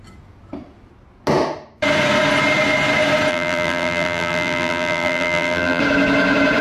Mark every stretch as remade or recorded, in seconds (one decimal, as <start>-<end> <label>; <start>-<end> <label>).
0.0-3.3 recorded; 3.3-5.8 remade; 5.8-6.6 recorded